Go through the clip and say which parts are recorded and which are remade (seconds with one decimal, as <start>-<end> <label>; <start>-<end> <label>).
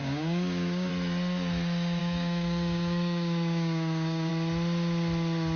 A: 0.0-0.9 remade; 0.9-2.0 recorded; 2.0-4.3 remade; 4.3-5.6 recorded